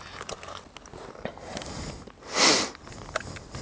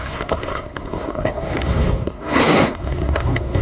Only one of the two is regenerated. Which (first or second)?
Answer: second